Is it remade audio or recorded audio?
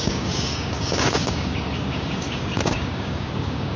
remade